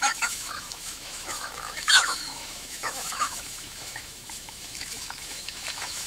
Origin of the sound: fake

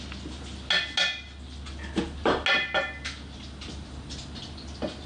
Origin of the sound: real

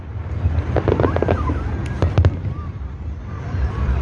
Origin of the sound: real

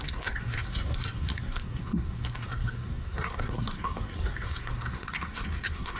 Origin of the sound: fake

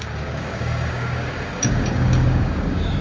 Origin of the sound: fake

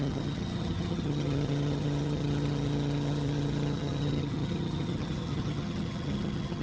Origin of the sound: fake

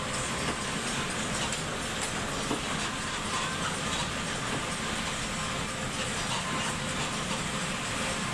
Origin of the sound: real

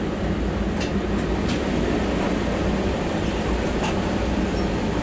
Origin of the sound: real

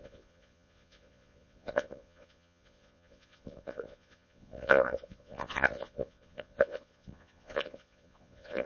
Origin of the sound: fake